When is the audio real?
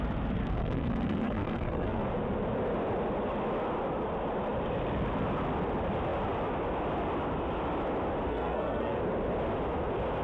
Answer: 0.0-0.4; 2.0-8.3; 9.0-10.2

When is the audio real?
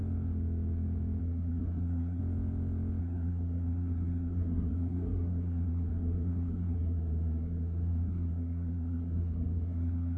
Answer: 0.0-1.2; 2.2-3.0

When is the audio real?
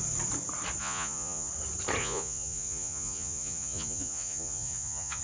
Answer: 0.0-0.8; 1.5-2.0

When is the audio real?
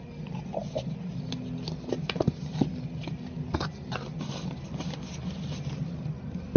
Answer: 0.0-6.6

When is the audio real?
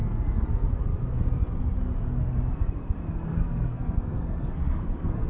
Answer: 0.0-3.3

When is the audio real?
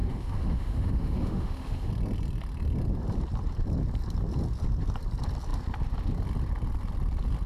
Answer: 1.9-7.5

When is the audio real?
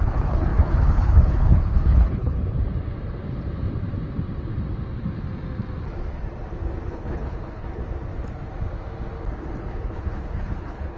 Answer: 2.4-6.9; 7.8-9.7